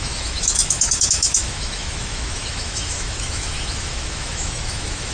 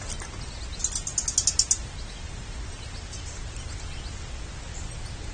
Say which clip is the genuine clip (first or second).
second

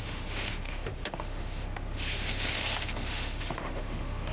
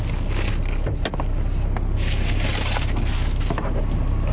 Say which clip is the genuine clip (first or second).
second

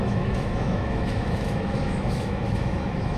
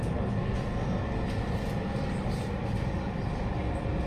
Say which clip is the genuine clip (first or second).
second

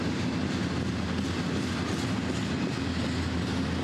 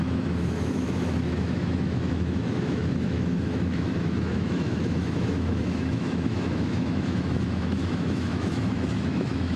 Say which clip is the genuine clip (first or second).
first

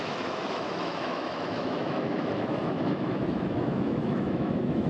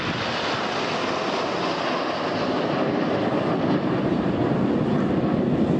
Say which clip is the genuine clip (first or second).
second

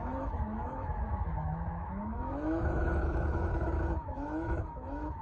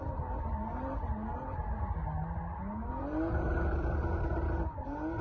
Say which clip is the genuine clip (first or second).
second